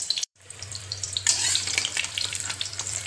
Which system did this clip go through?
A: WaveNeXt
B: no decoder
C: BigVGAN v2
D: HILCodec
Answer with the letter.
C